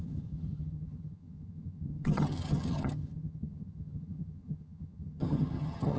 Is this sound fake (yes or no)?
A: yes